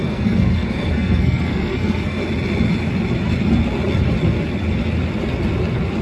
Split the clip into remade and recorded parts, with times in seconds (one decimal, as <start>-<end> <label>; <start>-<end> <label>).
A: 0.0-2.2 remade; 2.2-6.0 recorded